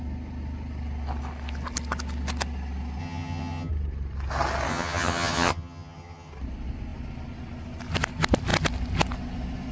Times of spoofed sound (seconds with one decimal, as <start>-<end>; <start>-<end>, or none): 3.0-3.7; 4.7-6.3